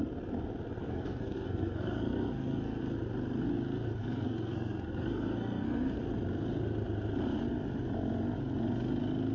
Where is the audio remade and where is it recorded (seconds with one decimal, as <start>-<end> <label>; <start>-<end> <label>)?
0.0-0.8 recorded; 0.8-2.8 remade; 2.8-4.0 recorded; 4.0-6.0 remade; 6.0-9.3 recorded